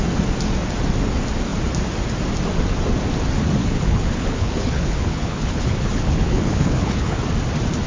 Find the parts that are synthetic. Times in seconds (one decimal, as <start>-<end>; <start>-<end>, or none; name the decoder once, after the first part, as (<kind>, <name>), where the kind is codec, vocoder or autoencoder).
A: 3.6-7.2 (codec, HILCodec)